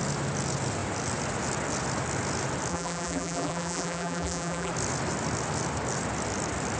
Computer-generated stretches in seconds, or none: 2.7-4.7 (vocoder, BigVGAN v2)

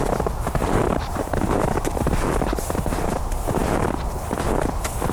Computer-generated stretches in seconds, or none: 0.6-2.2 (vocoder, BigVGAN v2)

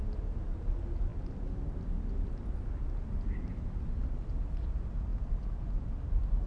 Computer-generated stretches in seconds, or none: 0.0-1.1 (vocoder, BigVGAN v2); 3.6-5.1; 6.1-6.5